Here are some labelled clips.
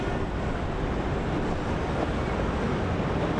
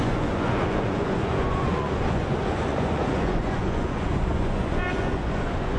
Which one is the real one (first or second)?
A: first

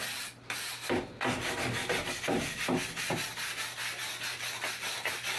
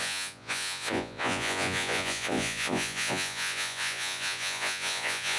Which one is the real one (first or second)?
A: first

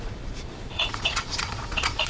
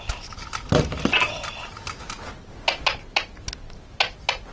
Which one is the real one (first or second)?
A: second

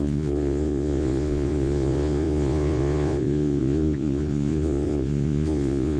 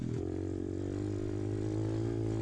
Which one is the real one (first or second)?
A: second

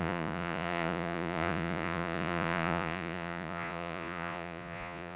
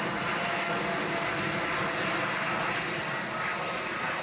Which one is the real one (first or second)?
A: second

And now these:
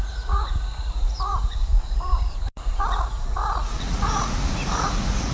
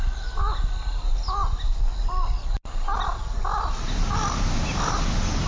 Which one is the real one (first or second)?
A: second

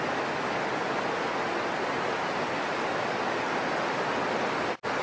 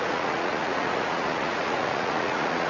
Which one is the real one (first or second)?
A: first